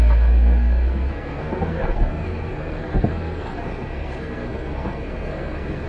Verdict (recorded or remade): remade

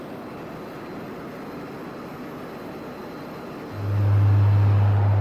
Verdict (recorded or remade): recorded